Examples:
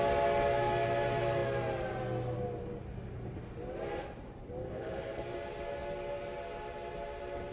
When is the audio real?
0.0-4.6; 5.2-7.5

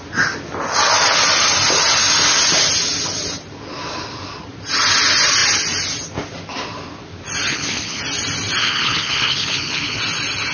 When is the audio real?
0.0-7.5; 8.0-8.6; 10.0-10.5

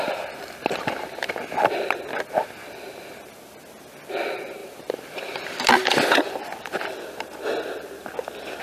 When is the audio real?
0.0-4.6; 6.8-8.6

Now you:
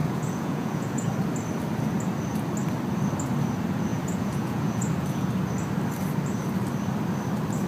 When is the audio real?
1.1-3.9; 5.3-7.7